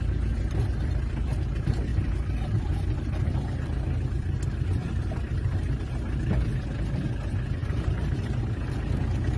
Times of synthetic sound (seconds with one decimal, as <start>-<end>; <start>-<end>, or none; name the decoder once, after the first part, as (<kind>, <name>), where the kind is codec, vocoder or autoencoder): 0.7-1.4 (vocoder, BigVGAN v2); 1.9-5.9; 7.6-8.4